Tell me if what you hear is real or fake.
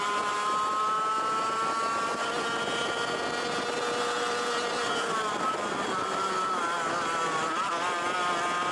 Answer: real